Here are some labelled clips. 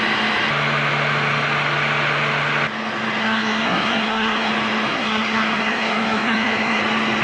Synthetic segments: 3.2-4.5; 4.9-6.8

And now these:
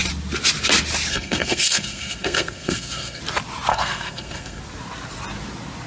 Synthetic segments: 1.1-3.2; 3.7-4.6

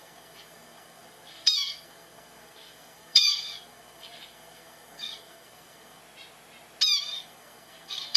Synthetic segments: 0.0-6.0; 7.0-8.2

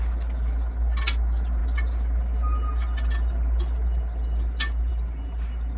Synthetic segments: none

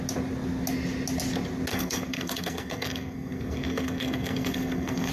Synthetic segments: 1.7-5.1

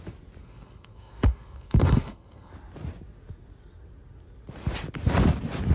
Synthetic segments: 0.4-2.5

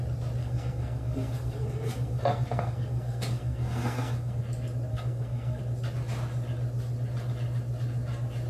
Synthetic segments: 0.4-4.4; 4.9-5.6